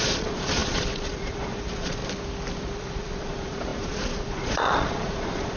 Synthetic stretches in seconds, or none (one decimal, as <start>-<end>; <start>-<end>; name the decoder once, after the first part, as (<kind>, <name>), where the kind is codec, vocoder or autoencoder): 0.0-2.0 (vocoder, Vocos); 2.6-5.6

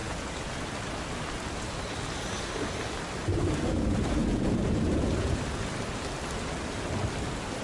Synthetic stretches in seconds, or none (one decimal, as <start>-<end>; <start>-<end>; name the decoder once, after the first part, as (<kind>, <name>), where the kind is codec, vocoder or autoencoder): 0.0-0.6 (vocoder, Vocos); 4.2-5.4

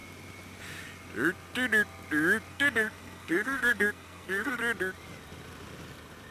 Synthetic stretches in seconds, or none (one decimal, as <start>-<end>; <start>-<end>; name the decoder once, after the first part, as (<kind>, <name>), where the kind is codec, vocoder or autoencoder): 2.5-4.6 (codec, SNAC)

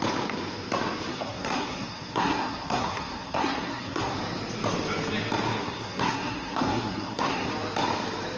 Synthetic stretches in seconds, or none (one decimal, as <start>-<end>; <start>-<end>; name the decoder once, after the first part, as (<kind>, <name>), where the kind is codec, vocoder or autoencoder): 1.1-4.2 (codec, SNAC); 5.6-7.5

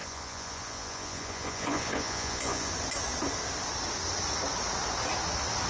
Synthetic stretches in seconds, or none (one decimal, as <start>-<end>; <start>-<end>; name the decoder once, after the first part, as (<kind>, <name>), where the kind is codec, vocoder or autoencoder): 0.0-2.7 (vocoder, Vocos)

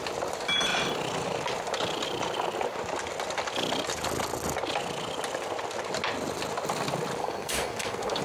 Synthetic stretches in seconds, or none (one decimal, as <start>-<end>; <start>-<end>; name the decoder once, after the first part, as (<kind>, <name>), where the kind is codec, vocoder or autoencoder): 7.2-8.2 (codec, SNAC)

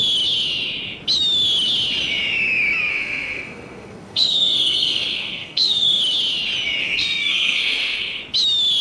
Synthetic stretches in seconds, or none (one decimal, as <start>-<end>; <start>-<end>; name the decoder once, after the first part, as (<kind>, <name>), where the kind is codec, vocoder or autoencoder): 2.9-6.0 (codec, SNAC); 6.8-8.2